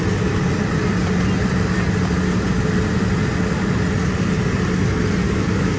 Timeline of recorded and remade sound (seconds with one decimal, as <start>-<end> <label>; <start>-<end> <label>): 0.0-5.2 recorded; 5.2-5.8 remade